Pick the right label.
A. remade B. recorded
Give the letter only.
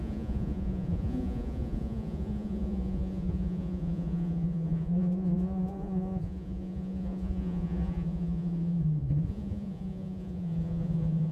A